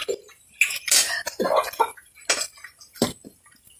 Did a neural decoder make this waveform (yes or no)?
no